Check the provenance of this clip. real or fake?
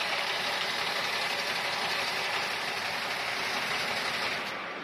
real